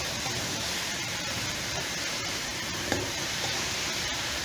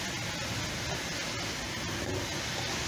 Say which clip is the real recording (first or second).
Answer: second